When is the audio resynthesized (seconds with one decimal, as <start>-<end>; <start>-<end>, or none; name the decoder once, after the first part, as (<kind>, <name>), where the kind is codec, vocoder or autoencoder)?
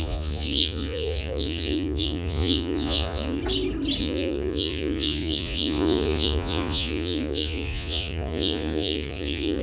0.0-3.4 (vocoder, Vocos); 4.0-9.6